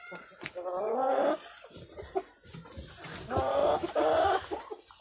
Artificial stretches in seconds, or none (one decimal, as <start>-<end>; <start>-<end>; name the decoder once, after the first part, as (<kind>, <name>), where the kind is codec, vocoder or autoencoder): none